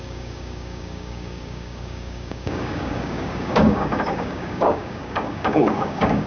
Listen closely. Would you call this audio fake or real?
fake